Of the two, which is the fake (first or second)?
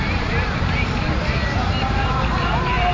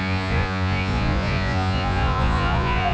second